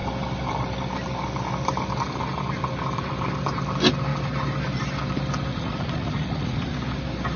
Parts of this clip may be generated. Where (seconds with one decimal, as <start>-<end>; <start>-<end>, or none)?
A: 5.5-6.7